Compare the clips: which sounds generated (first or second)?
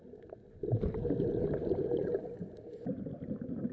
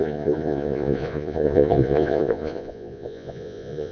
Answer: second